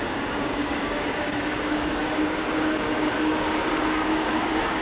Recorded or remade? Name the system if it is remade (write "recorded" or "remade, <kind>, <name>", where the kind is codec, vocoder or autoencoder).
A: remade, codec, DAC